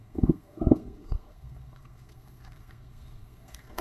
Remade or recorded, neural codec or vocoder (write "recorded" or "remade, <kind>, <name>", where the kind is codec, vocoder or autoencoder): remade, codec, SNAC